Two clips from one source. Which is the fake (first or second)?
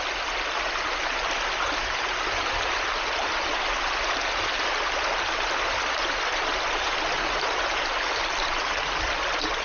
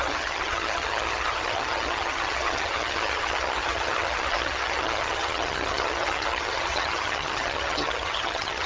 second